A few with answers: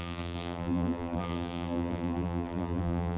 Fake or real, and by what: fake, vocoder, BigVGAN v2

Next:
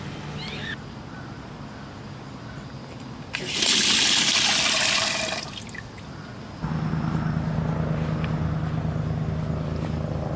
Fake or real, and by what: real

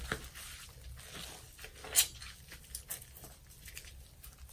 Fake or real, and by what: real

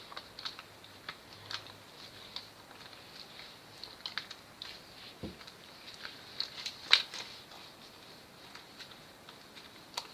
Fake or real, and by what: fake, vocoder, BigVGAN v2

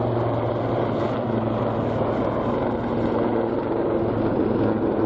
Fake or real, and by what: real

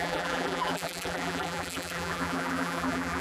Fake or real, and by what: fake, vocoder, BigVGAN v2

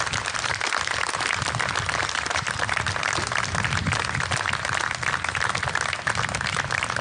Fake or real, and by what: fake, vocoder, BigVGAN v2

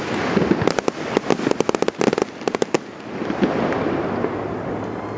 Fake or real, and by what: real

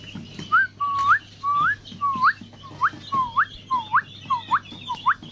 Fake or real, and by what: real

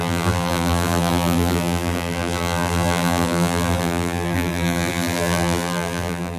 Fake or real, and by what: fake, vocoder, BigVGAN v2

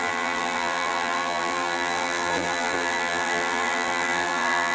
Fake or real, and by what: fake, vocoder, BigVGAN v2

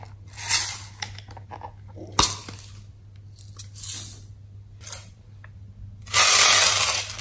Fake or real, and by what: real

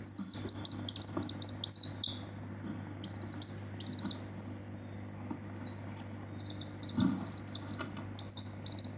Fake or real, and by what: real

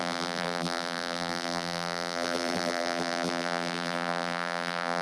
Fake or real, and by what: fake, vocoder, BigVGAN v2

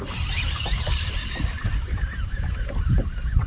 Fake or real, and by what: fake, vocoder, BigVGAN v2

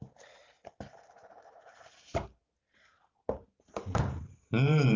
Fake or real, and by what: fake, vocoder, BigVGAN v2